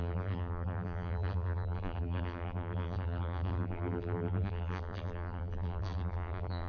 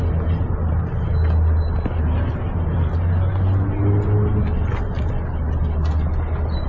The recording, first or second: second